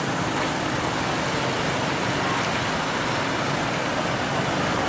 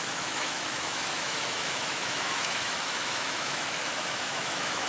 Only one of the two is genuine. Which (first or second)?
first